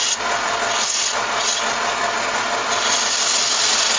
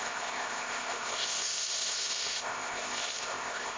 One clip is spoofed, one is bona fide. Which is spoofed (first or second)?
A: second